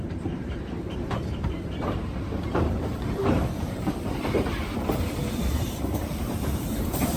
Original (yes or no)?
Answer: no